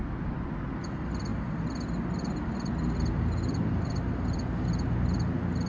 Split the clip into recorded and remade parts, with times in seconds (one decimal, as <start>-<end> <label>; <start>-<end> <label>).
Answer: 0.0-5.7 recorded